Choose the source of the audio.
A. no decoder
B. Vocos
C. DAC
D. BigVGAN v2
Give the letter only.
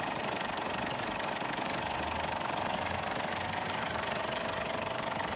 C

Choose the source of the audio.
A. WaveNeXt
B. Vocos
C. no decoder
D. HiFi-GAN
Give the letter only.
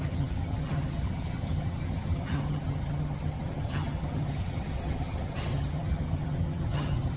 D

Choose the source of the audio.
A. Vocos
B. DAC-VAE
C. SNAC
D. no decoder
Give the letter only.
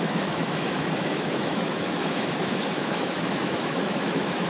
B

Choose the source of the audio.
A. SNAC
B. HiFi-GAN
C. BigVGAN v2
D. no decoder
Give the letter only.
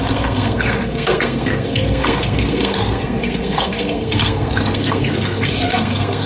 A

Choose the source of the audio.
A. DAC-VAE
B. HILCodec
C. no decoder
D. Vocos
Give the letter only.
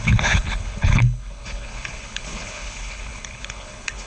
B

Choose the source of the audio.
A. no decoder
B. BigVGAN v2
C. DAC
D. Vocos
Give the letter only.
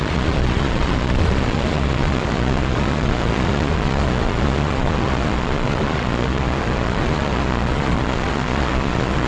D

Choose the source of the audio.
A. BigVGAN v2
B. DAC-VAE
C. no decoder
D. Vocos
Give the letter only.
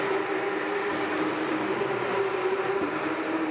A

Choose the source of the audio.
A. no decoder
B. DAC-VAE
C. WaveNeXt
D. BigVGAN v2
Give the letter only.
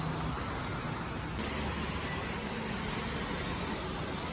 A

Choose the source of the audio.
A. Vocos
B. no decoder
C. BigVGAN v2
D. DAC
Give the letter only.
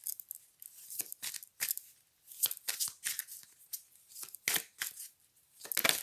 B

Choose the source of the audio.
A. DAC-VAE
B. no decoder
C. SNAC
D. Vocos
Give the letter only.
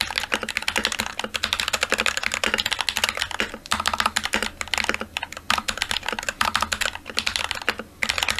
B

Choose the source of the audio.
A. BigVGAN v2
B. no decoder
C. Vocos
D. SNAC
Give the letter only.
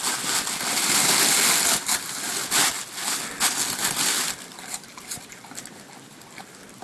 B